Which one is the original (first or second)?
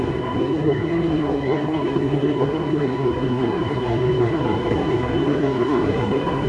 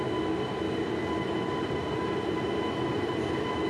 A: second